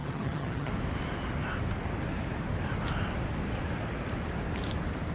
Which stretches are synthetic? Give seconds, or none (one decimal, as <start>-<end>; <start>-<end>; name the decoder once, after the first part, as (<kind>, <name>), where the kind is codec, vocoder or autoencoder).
0.0-0.7 (vocoder, HiFi-GAN)